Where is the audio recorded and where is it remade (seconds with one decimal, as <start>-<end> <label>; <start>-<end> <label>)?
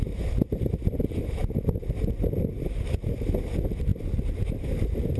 0.0-5.2 remade